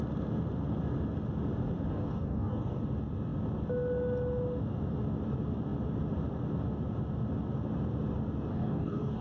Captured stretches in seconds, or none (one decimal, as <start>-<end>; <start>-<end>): 0.0-1.9; 2.8-8.5